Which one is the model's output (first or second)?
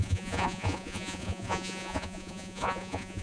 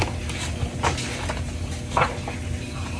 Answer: first